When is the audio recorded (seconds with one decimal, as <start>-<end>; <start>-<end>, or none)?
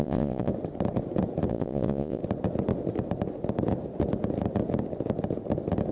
0.5-1.5; 2.2-5.9